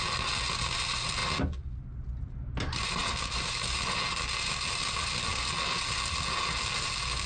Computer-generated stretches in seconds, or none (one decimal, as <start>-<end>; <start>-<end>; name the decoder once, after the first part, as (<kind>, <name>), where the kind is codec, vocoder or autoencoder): none